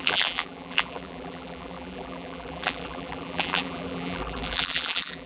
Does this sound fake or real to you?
fake